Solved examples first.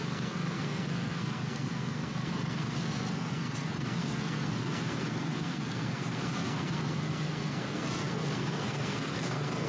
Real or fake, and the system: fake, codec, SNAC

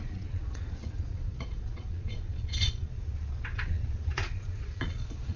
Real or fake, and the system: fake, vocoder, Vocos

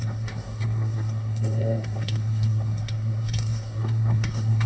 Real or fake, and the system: fake, codec, SNAC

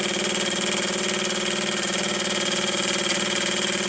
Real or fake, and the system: real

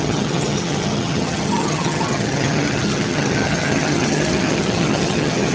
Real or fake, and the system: fake, vocoder, HiFi-GAN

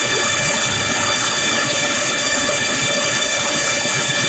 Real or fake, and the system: fake, codec, HILCodec